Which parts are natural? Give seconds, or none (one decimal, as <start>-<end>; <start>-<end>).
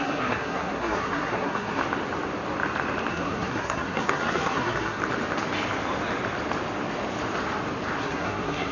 1.8-3.1; 5.0-8.0